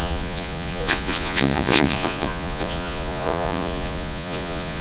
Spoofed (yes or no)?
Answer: yes